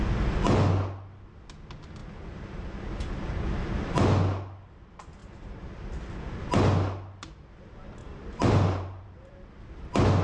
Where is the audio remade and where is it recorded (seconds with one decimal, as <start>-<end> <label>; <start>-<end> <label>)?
0.0-5.2 recorded; 5.2-5.7 remade; 5.7-8.0 recorded; 8.0-9.3 remade; 9.3-10.2 recorded